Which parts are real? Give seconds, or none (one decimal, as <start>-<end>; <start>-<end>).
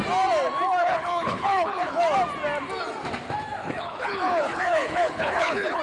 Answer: 0.0-0.8; 2.0-3.6